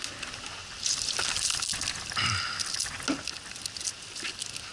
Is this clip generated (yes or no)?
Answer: no